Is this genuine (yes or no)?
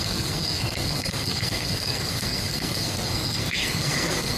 no